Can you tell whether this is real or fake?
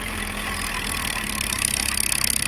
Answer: real